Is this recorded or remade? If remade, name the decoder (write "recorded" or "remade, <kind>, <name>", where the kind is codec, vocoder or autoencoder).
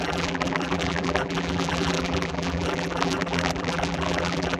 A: remade, vocoder, BigVGAN v2